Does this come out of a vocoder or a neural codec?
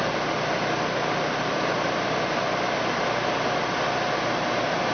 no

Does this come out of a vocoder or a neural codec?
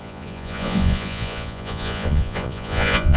yes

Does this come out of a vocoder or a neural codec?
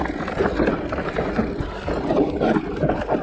no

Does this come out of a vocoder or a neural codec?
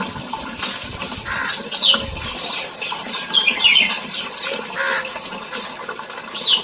no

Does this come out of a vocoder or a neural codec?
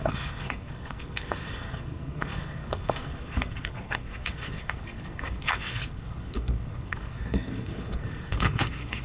yes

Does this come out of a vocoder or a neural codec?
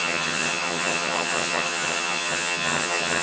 yes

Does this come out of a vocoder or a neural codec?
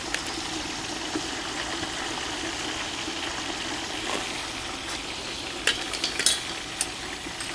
no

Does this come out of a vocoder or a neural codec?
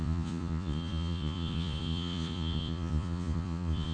yes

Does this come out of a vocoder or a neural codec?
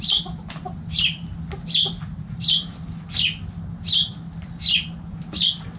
no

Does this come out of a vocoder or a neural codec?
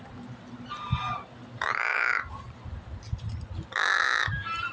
no